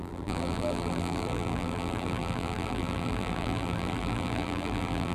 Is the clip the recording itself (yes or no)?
no